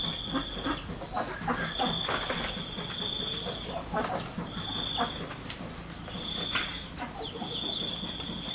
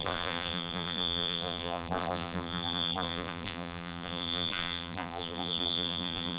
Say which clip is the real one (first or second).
first